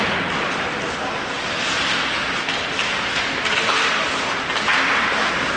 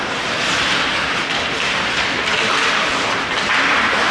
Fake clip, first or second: second